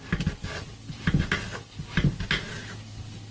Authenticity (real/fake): real